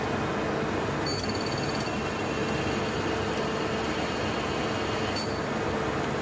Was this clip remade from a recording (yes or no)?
no